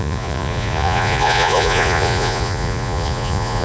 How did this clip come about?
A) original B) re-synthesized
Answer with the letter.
B